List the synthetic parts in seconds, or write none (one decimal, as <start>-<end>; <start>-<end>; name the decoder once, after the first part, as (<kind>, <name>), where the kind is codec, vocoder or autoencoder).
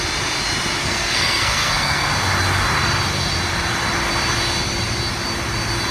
0.8-2.1 (codec, SNAC)